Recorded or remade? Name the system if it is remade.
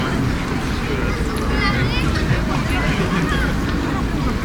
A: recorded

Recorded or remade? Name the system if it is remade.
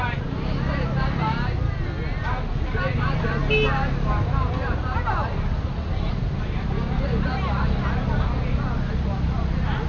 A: recorded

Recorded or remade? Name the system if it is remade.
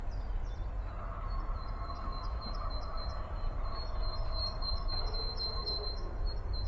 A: recorded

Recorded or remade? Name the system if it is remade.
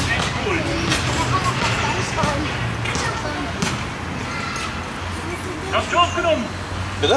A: recorded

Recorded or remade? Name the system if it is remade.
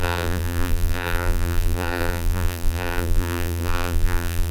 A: remade, vocoder, BigVGAN v2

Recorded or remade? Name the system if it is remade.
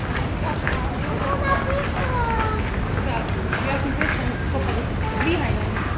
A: recorded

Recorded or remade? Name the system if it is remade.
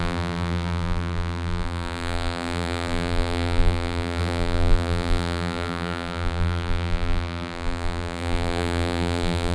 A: remade, vocoder, BigVGAN v2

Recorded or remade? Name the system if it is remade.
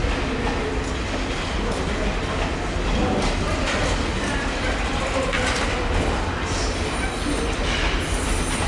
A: recorded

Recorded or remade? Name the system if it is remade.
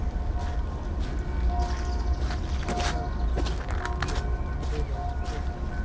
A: recorded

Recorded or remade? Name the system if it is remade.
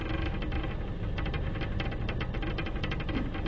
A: recorded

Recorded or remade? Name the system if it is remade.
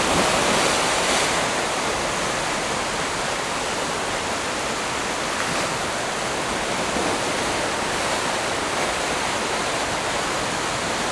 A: recorded